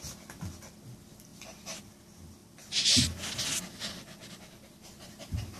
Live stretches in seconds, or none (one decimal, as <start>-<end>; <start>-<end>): 0.0-5.6